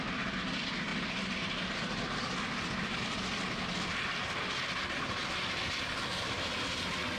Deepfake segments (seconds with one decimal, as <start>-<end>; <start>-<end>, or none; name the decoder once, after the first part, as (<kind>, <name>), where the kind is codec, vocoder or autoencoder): none